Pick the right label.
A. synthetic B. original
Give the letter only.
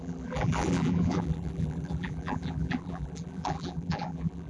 A